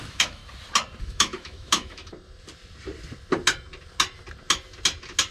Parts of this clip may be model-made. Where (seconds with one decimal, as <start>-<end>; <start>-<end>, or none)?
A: 0.0-0.4; 1.0-2.0